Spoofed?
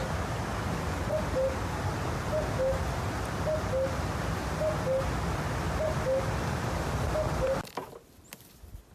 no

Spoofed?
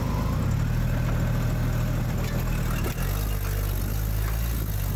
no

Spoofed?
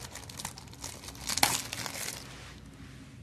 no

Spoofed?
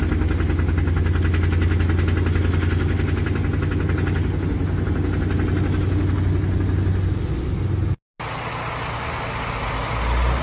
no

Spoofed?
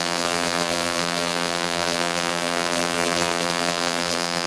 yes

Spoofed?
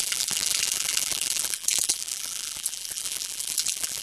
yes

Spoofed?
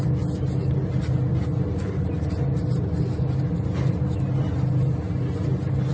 no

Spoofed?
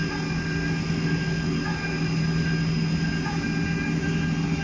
no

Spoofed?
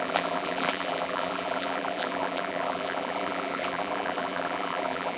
yes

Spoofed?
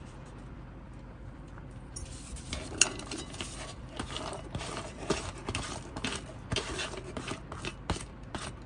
yes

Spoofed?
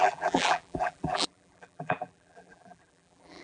yes